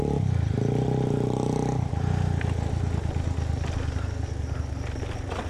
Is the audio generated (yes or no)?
no